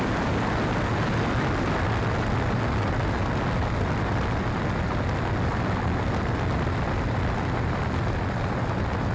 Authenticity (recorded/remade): recorded